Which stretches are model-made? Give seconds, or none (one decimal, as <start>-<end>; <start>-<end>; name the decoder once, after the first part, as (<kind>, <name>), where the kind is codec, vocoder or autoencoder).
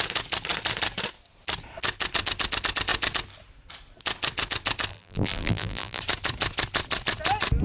4.9-6.0 (vocoder, BigVGAN v2)